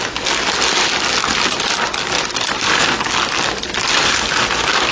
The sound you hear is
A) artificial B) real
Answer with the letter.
B